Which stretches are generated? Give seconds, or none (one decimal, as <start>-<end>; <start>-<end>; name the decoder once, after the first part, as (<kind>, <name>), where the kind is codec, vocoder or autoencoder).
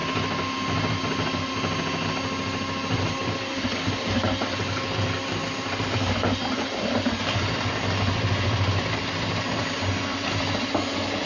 none